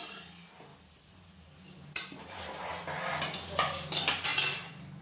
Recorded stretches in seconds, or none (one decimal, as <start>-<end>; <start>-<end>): 0.0-0.7; 2.7-5.0